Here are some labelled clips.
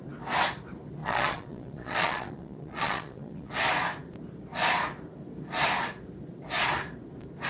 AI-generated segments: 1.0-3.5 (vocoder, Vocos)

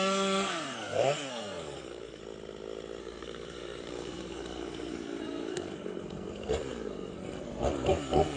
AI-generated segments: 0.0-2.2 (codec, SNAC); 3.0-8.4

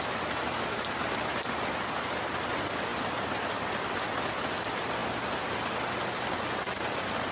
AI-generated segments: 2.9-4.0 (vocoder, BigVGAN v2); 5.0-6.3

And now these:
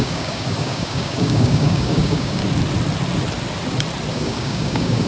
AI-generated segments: 0.0-2.4 (codec, DAC); 4.1-5.1

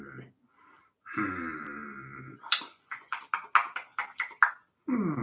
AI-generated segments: 2.3-3.2 (vocoder, Vocos)

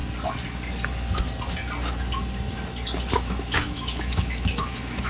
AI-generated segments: 3.1-5.1 (autoencoder, DAC-VAE)

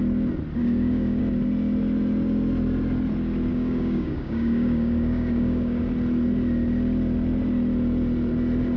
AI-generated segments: 0.6-1.2 (codec, DAC); 3.5-5.8

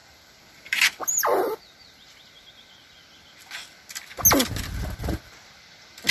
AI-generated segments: 0.0-1.6 (vocoder, BigVGAN v2)